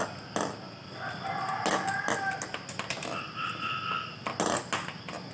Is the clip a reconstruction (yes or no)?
no